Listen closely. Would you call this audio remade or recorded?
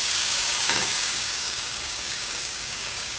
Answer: remade